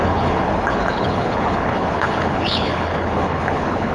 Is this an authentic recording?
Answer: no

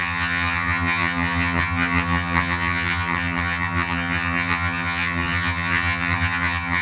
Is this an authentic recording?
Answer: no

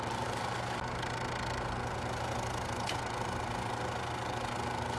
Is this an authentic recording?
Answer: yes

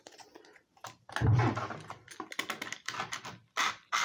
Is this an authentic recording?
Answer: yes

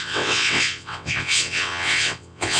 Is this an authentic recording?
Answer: no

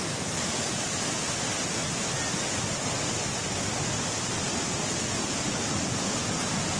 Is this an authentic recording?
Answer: yes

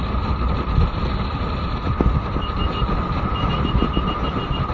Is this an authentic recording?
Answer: no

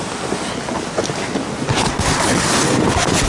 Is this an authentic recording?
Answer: yes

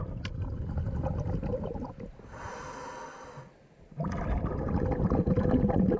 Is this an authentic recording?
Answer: yes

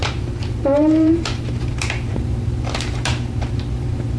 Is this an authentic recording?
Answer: no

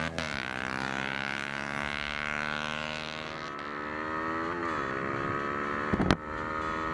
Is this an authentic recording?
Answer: yes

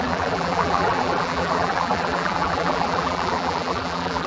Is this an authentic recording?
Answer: no